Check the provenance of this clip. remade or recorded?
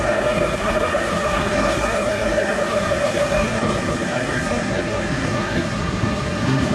remade